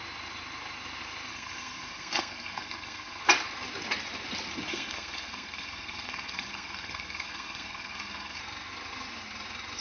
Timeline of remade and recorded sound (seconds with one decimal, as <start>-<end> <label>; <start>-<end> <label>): 0.0-1.3 recorded; 1.3-3.2 remade; 3.2-4.7 recorded; 4.7-8.4 remade; 8.4-9.8 recorded